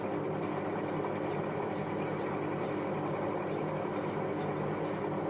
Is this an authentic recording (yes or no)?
yes